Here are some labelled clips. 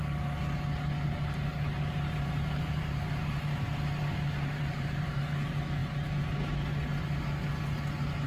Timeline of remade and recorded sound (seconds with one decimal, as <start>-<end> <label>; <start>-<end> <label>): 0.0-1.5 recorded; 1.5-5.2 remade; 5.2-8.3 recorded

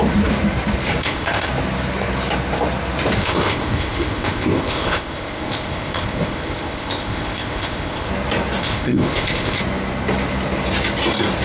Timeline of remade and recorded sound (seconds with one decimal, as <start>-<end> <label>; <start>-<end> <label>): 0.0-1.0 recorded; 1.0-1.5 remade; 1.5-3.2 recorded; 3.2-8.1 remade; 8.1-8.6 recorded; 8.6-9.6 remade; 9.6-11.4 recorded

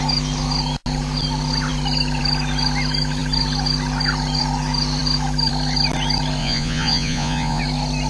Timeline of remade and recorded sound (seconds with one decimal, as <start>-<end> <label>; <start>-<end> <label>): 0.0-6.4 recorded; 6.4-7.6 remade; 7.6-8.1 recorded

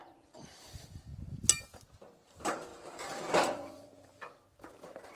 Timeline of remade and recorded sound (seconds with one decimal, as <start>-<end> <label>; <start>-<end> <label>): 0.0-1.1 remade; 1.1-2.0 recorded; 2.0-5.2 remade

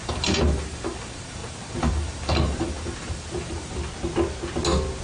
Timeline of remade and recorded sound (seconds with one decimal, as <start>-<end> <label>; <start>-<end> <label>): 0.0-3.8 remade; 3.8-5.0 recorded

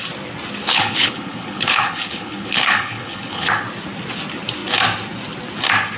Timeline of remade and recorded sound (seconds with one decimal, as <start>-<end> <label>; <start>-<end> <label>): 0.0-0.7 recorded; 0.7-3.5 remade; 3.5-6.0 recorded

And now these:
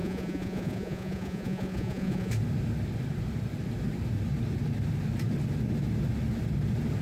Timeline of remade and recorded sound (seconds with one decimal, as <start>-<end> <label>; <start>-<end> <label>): 0.0-2.3 remade; 2.3-7.0 recorded